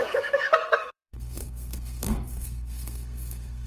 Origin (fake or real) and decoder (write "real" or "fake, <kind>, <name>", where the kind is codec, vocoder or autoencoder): fake, codec, SNAC